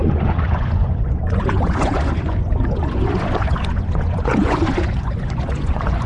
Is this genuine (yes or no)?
no